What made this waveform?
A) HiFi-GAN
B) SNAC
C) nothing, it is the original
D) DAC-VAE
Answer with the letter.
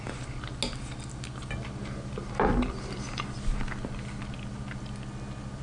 C